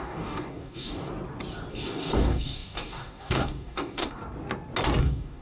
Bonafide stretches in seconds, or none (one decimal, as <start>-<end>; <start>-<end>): 1.1-1.7; 4.2-5.0